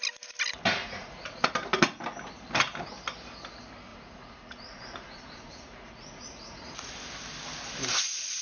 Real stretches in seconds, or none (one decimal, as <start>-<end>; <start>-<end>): 0.0-0.8; 1.5-3.9; 6.9-8.4